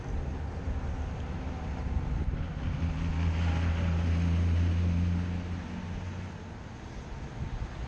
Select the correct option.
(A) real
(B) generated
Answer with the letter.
A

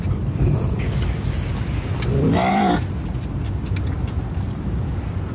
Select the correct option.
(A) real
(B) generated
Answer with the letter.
A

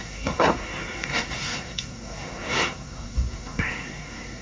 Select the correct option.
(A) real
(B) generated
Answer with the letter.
B